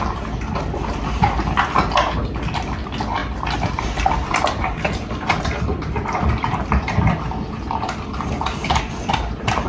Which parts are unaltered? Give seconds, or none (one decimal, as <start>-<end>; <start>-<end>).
0.0-9.7